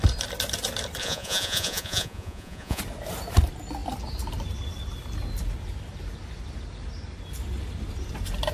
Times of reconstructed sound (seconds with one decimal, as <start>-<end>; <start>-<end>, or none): 1.0-2.8